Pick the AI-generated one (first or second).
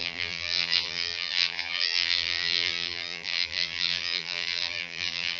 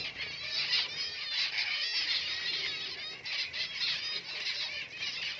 first